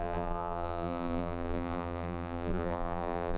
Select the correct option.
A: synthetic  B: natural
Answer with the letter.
A